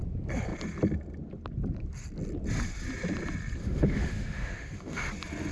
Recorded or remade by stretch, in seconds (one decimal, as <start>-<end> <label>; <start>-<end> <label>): 0.0-3.6 recorded; 3.6-5.1 remade; 5.1-5.5 recorded